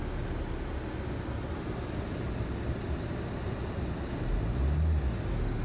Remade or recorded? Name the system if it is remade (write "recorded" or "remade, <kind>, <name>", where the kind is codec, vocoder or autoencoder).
recorded